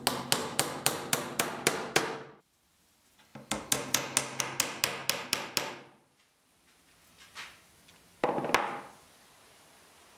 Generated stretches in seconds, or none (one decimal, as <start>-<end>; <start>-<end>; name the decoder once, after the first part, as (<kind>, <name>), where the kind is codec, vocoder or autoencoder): 0.4-2.4 (vocoder, BigVGAN v2)